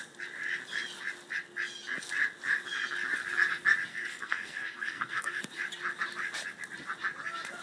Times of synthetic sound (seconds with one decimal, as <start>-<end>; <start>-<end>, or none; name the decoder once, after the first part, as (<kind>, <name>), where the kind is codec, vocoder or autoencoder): 3.9-5.4 (codec, SNAC)